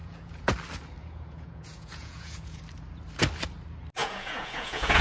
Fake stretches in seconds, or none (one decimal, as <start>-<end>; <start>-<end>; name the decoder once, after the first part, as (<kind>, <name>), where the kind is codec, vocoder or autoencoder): 0.0-0.5 (vocoder, Vocos); 1.0-2.6; 4.0-5.0